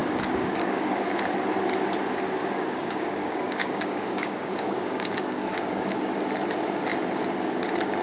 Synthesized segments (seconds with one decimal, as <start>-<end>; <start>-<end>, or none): 0.0-1.1; 2.4-6.1